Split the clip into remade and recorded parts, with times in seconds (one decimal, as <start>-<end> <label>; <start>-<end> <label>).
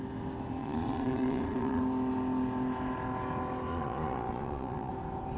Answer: 0.0-0.6 recorded; 0.6-1.8 remade; 1.8-3.7 recorded; 3.7-4.9 remade; 4.9-5.4 recorded